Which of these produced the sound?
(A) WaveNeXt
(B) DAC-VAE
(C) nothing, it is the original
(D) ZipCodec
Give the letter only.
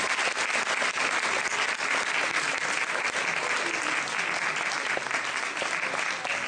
C